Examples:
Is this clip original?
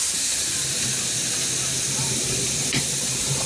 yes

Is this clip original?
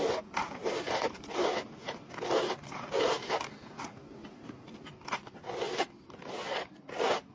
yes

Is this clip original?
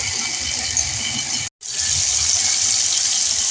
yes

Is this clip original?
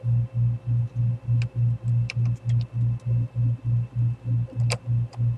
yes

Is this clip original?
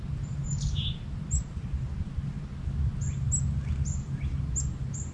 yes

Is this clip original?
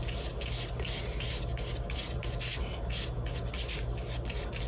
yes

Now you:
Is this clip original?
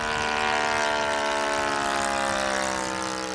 yes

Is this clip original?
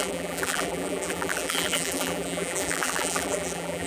no